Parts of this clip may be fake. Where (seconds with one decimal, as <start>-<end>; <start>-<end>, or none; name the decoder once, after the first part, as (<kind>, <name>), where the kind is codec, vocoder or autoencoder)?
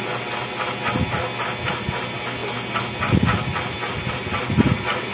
none